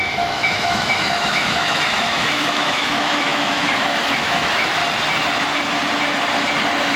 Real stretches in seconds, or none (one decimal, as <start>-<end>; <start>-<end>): 4.8-7.0